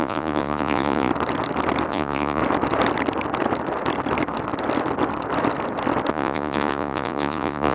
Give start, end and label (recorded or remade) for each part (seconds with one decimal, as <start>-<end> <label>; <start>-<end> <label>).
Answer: 0.0-1.1 remade; 1.1-1.9 recorded; 1.9-2.4 remade; 2.4-6.1 recorded; 6.1-7.7 remade